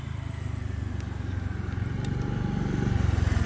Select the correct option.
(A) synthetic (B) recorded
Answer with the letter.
B